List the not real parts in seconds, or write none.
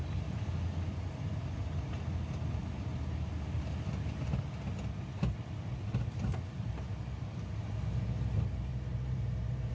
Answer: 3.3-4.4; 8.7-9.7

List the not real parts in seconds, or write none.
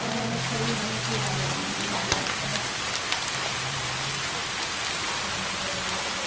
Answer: 2.5-3.8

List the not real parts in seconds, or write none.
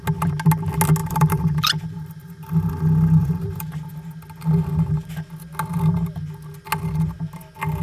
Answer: 1.0-2.7; 3.2-3.7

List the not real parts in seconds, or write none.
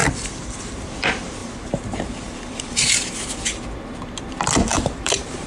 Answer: 1.4-3.3; 4.7-5.5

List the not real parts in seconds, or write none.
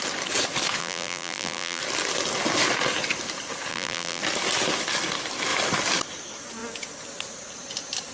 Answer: 0.8-1.8; 3.7-4.2